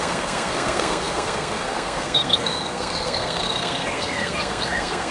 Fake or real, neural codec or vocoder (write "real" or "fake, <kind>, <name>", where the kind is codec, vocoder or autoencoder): fake, codec, SNAC